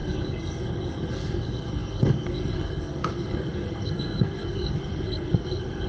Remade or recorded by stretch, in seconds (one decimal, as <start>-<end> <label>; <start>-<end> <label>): 0.0-5.9 remade